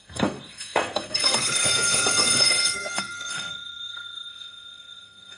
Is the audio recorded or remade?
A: remade